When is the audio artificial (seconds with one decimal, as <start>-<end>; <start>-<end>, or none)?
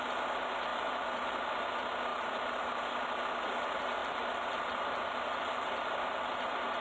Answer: 0.7-1.5; 2.1-2.7; 4.0-6.3